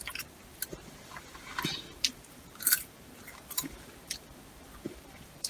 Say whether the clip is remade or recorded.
remade